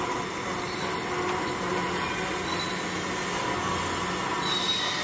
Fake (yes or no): no